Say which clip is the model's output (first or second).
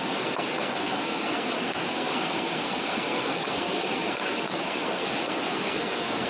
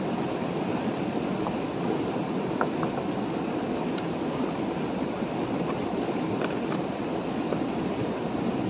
first